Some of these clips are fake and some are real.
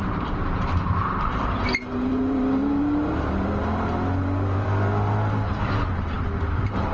fake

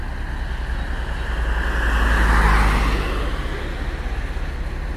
real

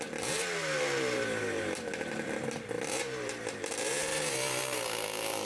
fake